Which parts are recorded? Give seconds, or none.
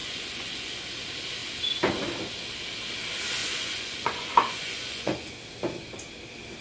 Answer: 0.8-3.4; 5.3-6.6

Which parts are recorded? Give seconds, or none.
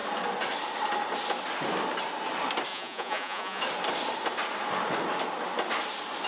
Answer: 0.0-2.7; 3.6-6.3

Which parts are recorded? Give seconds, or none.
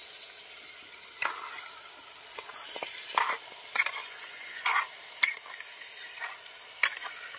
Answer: 0.0-4.0; 4.8-7.4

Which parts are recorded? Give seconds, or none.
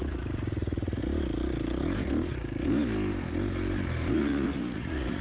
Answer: 1.0-4.1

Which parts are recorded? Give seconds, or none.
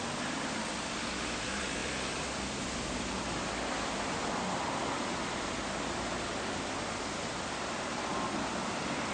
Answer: 0.0-9.1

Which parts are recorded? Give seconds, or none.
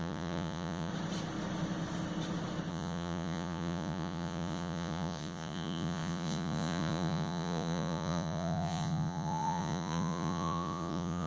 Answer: 0.9-2.7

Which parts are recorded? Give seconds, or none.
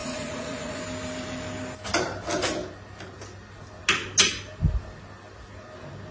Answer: 0.8-6.1